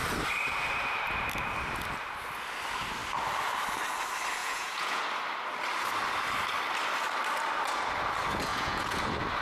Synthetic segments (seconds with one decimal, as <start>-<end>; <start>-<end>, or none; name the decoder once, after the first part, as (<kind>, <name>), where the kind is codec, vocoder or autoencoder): 4.4-5.0 (vocoder, Vocos); 8.5-9.0